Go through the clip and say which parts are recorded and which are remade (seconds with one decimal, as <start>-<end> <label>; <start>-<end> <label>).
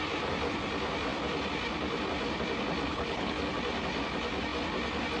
0.0-2.9 recorded; 2.9-3.4 remade; 3.4-5.2 recorded